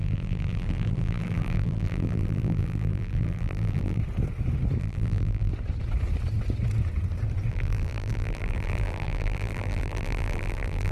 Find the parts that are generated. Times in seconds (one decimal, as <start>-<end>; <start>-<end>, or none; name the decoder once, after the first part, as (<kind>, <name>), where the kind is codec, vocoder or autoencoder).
0.0-4.0 (vocoder, BigVGAN v2); 4.8-5.5; 7.5-10.9